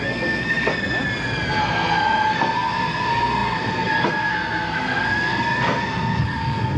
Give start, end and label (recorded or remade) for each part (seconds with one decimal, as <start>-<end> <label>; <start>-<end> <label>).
0.0-0.7 remade; 0.7-1.6 recorded; 1.6-6.8 remade